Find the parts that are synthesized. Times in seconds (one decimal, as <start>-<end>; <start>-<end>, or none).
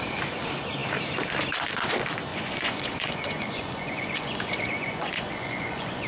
2.3-6.1